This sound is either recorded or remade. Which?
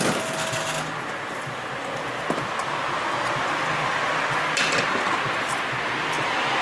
recorded